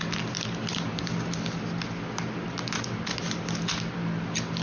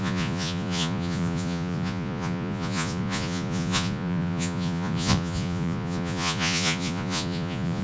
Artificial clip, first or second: second